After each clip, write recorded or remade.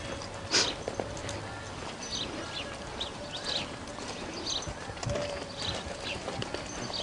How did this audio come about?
recorded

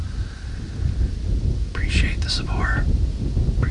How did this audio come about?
recorded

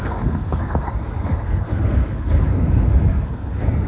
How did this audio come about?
remade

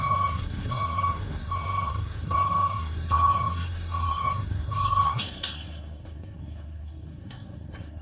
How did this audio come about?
remade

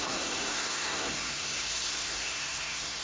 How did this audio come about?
remade